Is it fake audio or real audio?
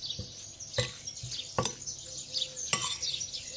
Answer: real